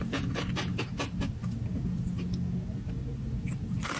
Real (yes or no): yes